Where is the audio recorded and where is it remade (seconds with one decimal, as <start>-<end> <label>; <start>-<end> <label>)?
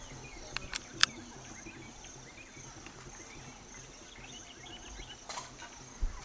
0.0-1.0 remade; 1.0-1.9 recorded; 1.9-3.5 remade; 3.5-6.2 recorded